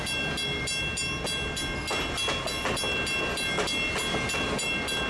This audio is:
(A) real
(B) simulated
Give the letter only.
A